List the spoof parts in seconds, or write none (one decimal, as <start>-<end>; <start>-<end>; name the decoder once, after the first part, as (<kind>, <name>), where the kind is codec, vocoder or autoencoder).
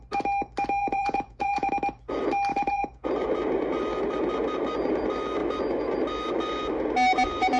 0.8-1.7 (vocoder, Vocos); 2.5-3.1